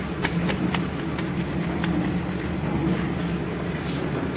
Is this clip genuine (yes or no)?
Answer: yes